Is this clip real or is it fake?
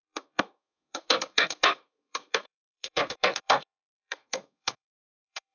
fake